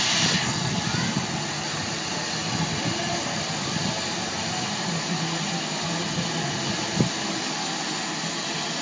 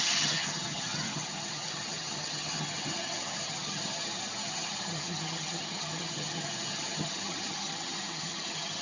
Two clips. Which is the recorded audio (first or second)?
first